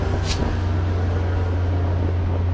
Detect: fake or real real